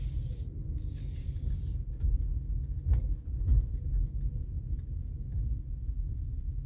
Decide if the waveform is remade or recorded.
recorded